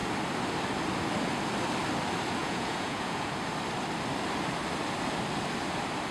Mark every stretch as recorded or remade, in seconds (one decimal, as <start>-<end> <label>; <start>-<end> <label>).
0.0-2.4 recorded; 2.4-3.4 remade; 3.4-6.1 recorded